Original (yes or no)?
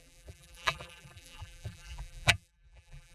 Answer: no